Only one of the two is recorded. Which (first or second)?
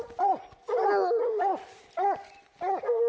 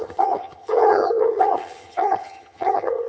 first